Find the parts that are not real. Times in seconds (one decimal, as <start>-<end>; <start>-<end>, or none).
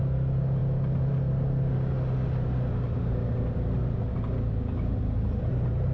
none